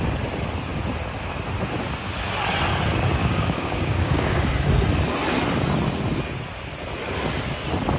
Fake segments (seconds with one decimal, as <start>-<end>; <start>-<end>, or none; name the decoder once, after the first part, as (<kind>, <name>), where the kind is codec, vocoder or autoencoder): 3.2-4.5 (codec, DAC)